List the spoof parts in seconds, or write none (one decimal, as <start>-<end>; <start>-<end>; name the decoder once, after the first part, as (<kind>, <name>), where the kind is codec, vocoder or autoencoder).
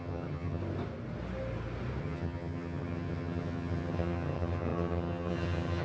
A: 0.0-0.6 (vocoder, HiFi-GAN); 2.0-5.8